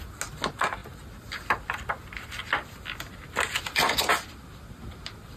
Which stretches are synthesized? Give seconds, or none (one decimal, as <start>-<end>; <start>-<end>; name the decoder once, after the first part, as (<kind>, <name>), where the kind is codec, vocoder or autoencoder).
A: none